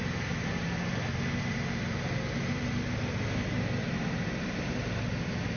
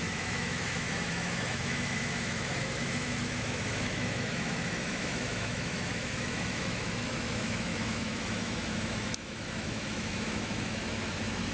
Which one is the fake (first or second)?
second